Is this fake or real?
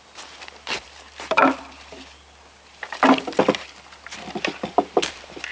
real